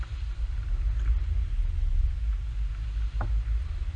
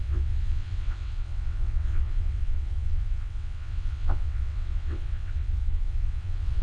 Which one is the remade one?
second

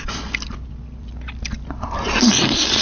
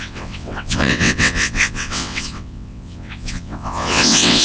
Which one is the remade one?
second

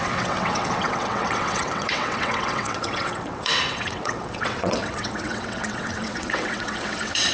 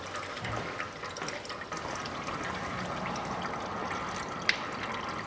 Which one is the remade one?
first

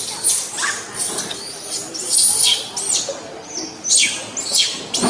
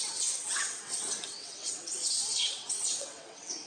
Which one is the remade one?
second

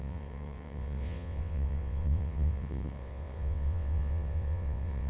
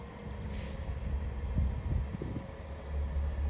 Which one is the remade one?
first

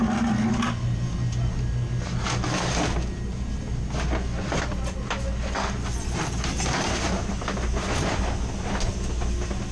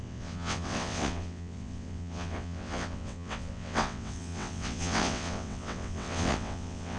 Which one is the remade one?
second